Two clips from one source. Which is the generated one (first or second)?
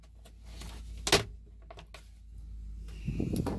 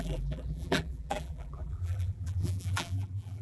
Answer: second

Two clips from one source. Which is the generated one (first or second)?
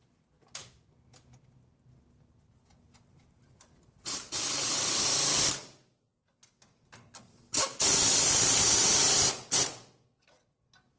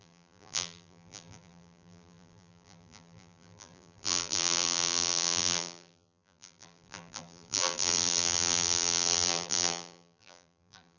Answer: second